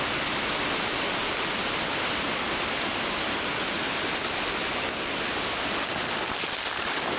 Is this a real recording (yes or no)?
yes